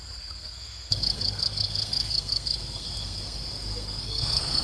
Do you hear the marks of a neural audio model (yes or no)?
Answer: yes